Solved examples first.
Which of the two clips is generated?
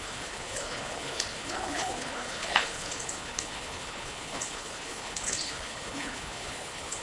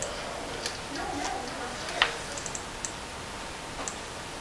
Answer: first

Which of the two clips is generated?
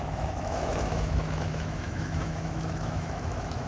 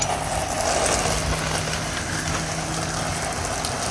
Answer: first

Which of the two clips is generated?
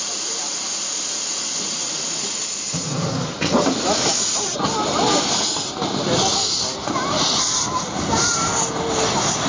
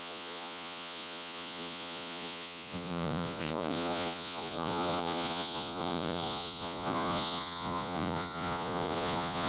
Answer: second